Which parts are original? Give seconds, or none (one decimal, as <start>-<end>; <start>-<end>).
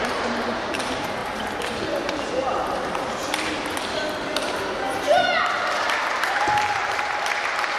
1.2-2.0; 3.2-6.3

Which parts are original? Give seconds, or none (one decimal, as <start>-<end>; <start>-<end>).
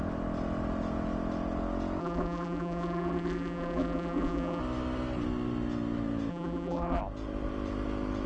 0.0-2.0; 4.6-6.3; 7.0-8.3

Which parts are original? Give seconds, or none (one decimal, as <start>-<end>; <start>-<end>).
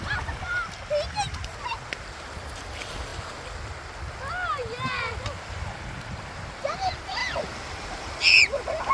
0.0-7.2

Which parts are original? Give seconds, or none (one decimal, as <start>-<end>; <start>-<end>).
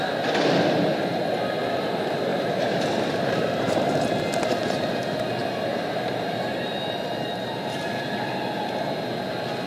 0.0-2.3; 3.9-5.4; 7.8-9.7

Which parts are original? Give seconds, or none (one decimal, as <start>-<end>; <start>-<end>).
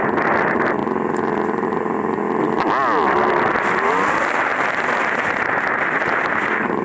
0.0-6.8